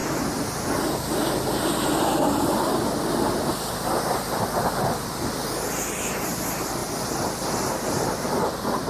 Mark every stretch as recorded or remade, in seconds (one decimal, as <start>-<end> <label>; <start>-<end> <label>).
0.0-6.8 remade; 6.8-8.2 recorded; 8.2-8.9 remade